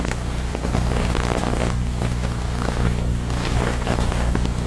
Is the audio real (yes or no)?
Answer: no